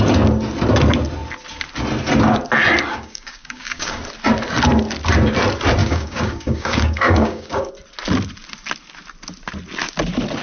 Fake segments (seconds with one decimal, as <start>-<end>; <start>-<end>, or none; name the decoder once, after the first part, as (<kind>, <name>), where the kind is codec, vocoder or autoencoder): 2.9-4.0 (codec, DAC); 5.8-7.7